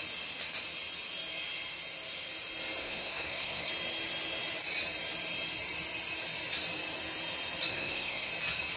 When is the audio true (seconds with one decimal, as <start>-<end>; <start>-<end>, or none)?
0.0-2.8; 3.7-7.7; 8.3-8.8